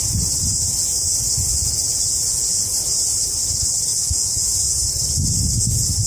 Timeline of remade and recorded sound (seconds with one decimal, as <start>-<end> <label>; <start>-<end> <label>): 0.0-1.5 recorded; 1.5-2.7 remade; 2.7-3.9 recorded; 3.9-4.9 remade; 4.9-6.1 recorded